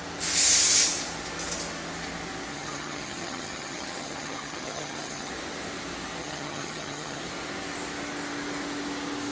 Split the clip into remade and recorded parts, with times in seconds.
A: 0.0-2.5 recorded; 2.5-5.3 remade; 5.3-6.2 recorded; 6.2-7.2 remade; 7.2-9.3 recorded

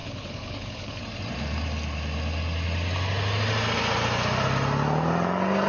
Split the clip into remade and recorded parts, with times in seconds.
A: 0.0-1.0 remade; 1.0-5.7 recorded